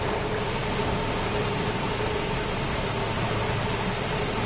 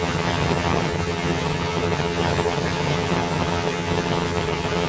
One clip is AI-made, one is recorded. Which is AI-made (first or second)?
second